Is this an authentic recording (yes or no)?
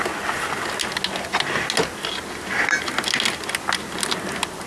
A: yes